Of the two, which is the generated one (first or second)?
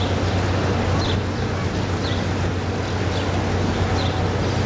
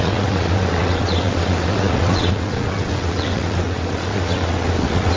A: second